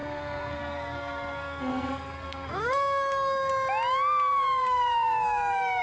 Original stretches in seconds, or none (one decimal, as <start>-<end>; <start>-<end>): 3.5-4.3